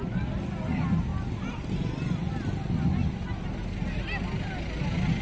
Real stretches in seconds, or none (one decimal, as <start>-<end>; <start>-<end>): 0.0-5.2